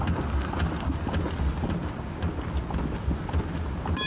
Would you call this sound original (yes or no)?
yes